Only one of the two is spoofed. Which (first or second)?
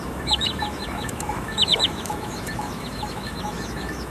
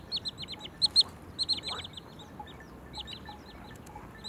first